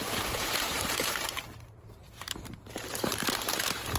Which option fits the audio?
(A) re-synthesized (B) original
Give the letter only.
A